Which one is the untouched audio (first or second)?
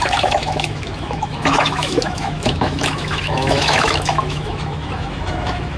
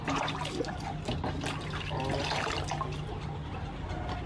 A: second